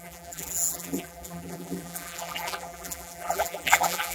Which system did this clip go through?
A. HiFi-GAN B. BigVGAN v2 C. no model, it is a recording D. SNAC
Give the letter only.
B